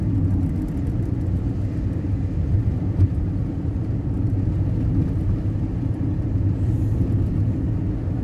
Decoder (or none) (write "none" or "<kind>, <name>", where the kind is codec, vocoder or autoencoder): none